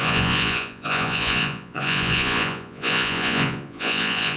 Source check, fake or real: fake